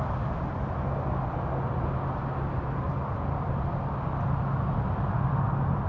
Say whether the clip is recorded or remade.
recorded